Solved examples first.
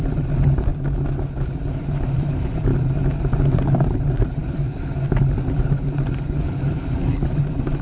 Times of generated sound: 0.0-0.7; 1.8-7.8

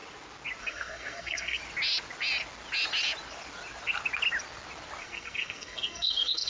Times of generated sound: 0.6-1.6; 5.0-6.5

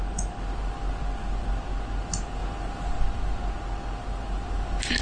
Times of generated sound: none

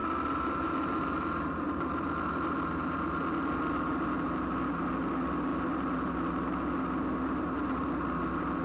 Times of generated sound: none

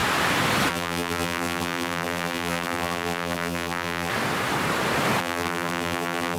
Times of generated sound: 0.7-4.1; 5.2-6.4

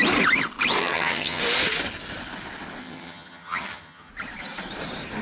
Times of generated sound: 0.8-1.4; 2.8-4.1

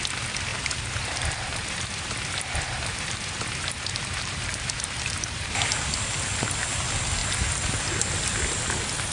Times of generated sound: 0.5-5.7

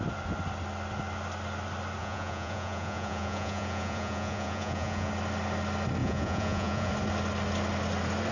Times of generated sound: 2.0-5.1; 6.0-6.9